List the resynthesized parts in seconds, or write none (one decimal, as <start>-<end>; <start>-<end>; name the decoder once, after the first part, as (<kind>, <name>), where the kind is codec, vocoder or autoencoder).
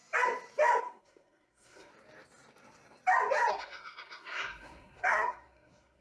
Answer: 0.8-1.9 (codec, SNAC); 3.5-6.0